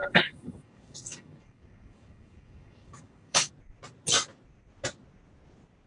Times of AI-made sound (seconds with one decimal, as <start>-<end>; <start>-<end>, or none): 0.0-3.5